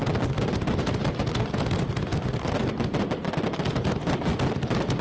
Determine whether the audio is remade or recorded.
recorded